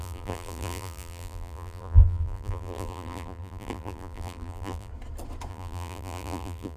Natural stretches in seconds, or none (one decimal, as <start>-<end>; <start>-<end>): 4.9-5.5